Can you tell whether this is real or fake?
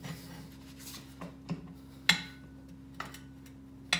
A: real